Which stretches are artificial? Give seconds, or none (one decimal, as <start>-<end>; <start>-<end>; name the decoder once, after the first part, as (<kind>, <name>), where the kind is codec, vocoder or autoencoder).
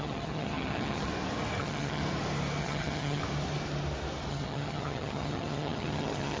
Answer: 0.0-1.1 (vocoder, HiFi-GAN); 1.6-2.0; 2.6-3.2; 4.3-6.4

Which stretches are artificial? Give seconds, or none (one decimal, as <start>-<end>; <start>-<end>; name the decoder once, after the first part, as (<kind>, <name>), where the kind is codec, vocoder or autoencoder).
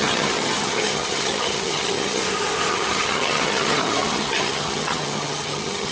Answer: 0.0-2.2 (vocoder, HiFi-GAN); 2.7-5.9